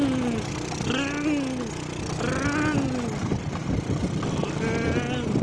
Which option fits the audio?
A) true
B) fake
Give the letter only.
A